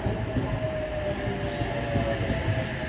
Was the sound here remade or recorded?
recorded